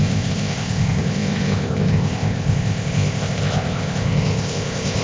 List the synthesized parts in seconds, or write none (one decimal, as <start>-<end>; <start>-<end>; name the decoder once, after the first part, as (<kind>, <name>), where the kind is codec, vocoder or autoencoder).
0.0-5.0 (codec, ZipCodec)